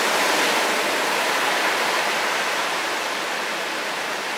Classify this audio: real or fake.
real